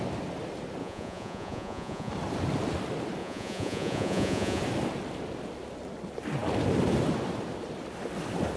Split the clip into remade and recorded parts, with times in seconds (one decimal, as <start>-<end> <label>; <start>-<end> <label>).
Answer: 0.0-0.8 recorded; 0.8-2.1 remade; 2.1-3.2 recorded; 3.2-4.6 remade; 4.6-8.6 recorded